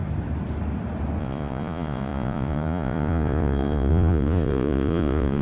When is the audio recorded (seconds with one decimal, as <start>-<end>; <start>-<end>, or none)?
0.0-1.2